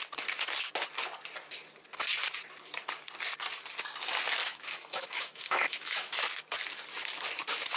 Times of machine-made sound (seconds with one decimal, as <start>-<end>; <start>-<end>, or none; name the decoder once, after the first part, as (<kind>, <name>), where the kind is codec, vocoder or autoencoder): 4.4-6.3 (autoencoder, DAC-VAE)